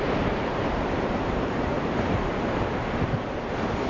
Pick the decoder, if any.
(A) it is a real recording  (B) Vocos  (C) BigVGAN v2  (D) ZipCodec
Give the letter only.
C